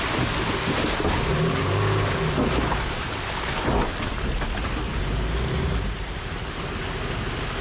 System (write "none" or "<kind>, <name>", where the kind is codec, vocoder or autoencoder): none